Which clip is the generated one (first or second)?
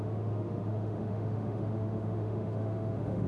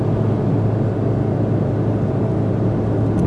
first